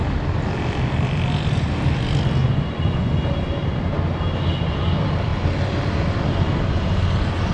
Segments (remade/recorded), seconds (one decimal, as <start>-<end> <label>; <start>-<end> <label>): 0.0-2.4 recorded; 2.4-3.1 remade; 3.1-7.5 recorded